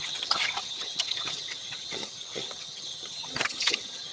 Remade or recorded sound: remade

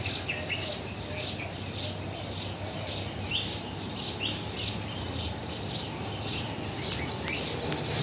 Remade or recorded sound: recorded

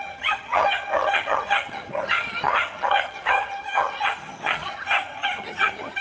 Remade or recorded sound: remade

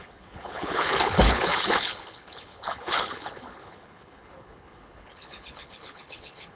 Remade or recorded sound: remade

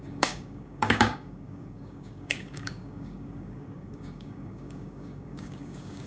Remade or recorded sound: remade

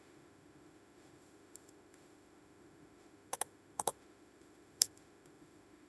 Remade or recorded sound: remade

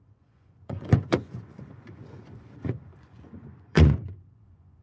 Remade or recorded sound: remade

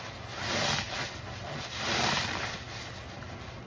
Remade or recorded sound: recorded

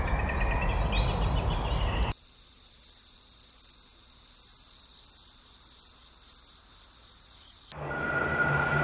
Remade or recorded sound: recorded